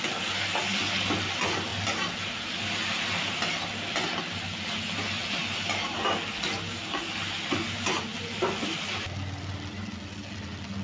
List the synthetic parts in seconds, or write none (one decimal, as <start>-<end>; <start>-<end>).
none